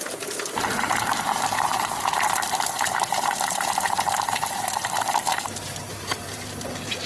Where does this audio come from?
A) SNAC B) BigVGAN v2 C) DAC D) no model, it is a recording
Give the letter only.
B